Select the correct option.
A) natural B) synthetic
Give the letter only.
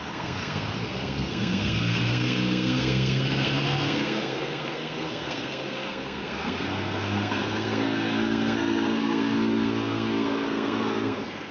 B